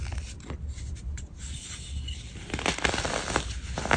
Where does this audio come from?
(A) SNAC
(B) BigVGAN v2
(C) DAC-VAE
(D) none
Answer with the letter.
D